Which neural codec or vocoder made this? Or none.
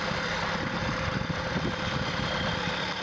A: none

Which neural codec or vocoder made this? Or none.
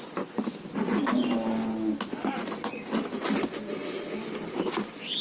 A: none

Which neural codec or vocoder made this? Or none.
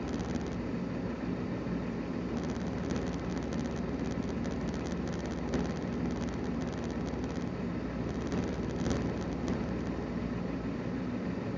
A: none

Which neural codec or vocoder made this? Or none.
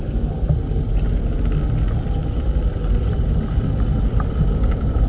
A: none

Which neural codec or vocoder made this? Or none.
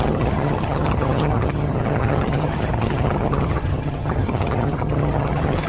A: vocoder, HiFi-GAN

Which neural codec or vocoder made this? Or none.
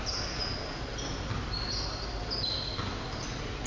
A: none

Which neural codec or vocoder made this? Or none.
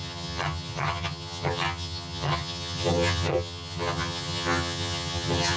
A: vocoder, HiFi-GAN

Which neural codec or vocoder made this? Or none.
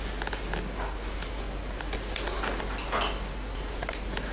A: none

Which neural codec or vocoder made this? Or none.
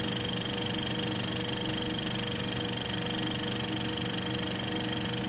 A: none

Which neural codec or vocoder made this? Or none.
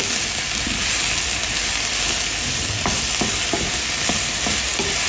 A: none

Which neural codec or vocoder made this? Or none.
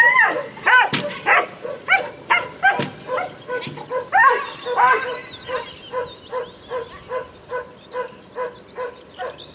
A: none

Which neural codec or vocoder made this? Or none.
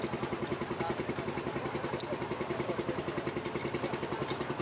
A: none